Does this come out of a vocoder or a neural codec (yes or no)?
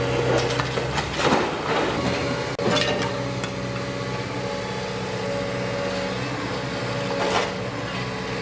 no